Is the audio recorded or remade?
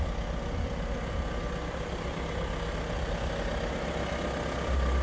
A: recorded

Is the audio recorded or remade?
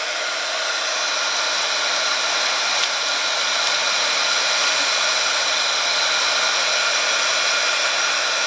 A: recorded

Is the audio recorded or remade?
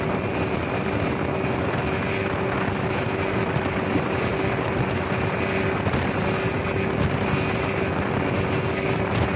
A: recorded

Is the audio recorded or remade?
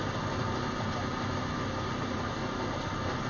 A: recorded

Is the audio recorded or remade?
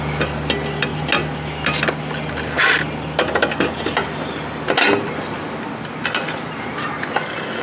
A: recorded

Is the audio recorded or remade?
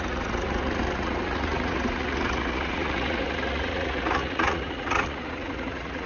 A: remade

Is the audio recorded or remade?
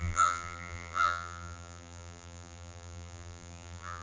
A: remade